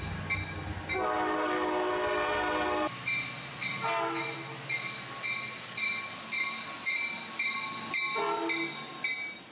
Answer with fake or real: real